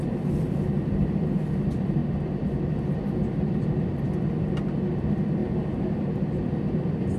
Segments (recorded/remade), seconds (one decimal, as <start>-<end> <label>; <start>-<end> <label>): 0.0-3.9 remade; 3.9-4.4 recorded; 4.4-5.4 remade; 5.4-6.0 recorded; 6.0-7.2 remade